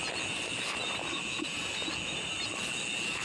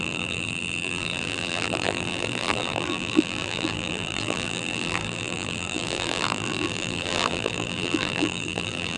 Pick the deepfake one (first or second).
second